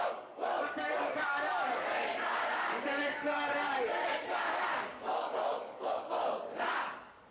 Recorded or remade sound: remade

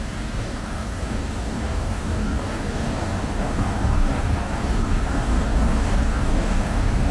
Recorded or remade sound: remade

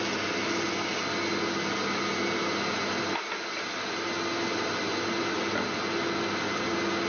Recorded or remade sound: recorded